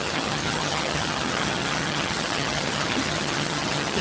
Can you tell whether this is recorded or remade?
remade